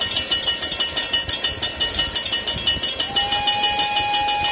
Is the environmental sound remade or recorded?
recorded